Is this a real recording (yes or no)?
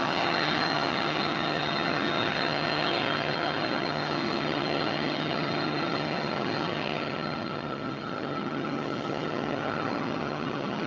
no